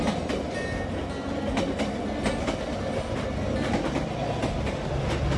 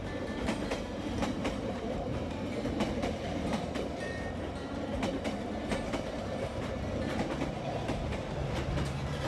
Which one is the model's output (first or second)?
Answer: second